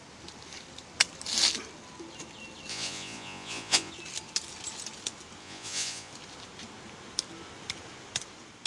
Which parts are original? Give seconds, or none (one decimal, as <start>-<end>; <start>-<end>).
0.0-2.7; 3.9-5.4; 6.1-8.7